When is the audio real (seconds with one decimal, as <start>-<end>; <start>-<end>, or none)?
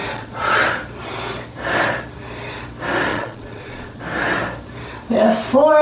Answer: 0.6-3.1; 4.0-5.8